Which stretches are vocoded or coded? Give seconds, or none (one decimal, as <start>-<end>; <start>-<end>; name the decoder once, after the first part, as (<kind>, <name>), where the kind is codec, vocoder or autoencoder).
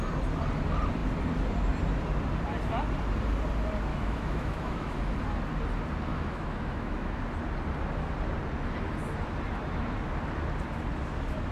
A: 3.9-5.0 (autoencoder, DAC-VAE); 6.1-7.2